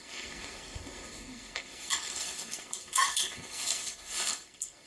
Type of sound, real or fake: fake